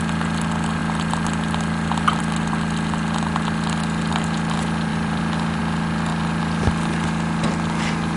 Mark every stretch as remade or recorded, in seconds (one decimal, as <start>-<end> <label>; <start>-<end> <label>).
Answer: 0.0-4.9 recorded; 4.9-5.6 remade; 5.6-6.1 recorded; 6.1-6.7 remade; 6.7-8.2 recorded